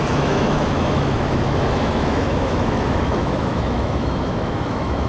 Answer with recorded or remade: remade